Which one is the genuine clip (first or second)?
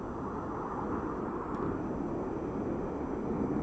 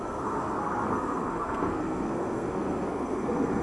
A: first